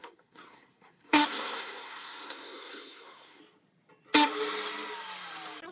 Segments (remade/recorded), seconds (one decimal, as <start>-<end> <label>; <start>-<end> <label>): 0.0-3.4 remade; 3.4-5.7 recorded